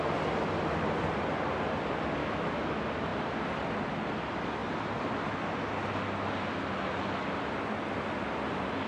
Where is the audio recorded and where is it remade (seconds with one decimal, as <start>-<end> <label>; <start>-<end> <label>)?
0.0-2.2 recorded; 2.2-2.7 remade; 2.7-8.9 recorded